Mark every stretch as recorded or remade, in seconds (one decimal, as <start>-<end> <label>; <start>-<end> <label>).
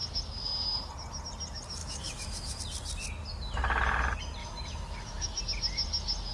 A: 0.0-1.8 recorded; 1.8-2.6 remade; 2.6-4.4 recorded; 4.4-5.4 remade; 5.4-6.3 recorded